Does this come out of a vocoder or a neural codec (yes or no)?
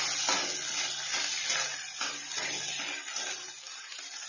no